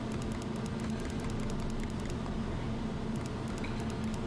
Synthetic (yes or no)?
no